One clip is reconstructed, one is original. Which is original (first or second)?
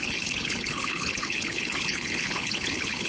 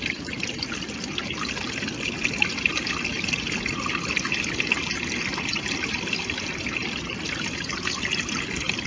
second